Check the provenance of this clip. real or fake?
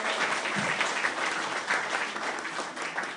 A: real